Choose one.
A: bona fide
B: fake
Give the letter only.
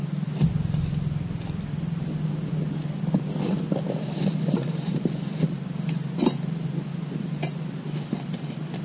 A